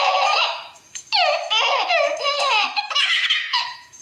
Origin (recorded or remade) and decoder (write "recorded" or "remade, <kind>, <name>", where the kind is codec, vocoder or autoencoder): remade, autoencoder, DAC-VAE